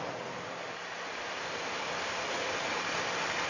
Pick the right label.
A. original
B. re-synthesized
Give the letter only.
A